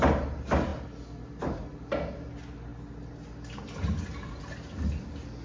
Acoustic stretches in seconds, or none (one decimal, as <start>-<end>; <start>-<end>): 0.0-5.4